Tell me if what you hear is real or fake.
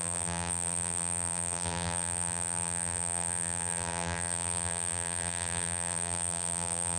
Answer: fake